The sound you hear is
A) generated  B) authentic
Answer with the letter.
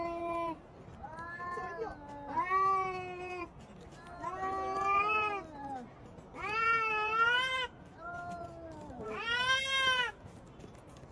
B